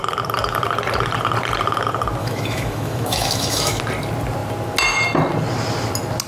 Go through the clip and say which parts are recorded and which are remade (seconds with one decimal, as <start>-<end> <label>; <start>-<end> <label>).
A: 0.0-2.2 recorded; 2.2-3.8 remade; 3.8-6.3 recorded